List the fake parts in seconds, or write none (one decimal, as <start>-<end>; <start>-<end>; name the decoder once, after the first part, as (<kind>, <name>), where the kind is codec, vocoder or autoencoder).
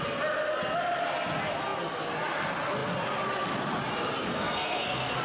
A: 4.3-5.2 (codec, SNAC)